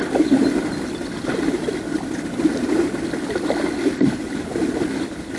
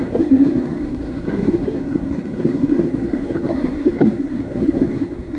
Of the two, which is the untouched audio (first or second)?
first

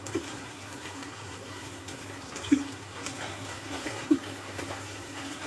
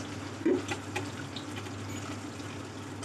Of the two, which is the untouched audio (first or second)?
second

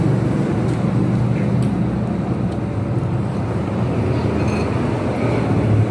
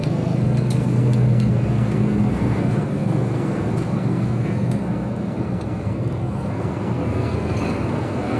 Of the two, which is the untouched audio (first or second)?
first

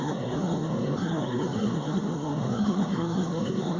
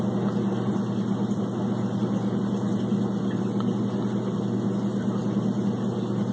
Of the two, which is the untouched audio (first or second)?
second